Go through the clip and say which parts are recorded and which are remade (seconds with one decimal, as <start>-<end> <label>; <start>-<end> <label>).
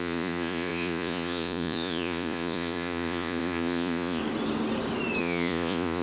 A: 0.0-4.2 remade; 4.2-5.2 recorded; 5.2-6.0 remade